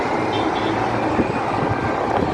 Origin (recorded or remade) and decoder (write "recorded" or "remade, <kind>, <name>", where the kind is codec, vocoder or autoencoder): recorded